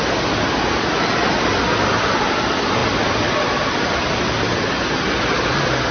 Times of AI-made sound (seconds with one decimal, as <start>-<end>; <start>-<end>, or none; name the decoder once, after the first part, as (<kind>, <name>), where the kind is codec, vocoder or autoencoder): none